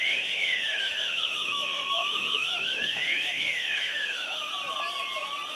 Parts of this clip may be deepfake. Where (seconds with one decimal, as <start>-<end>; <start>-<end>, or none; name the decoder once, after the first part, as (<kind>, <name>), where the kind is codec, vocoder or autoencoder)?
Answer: 0.0-4.5 (autoencoder, DAC-VAE)